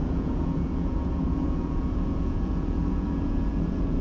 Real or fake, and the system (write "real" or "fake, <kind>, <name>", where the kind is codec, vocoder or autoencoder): fake, vocoder, Vocos